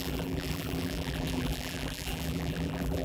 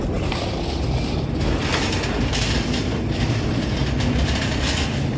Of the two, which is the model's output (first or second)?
first